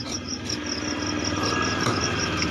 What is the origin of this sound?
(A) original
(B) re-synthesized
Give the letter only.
A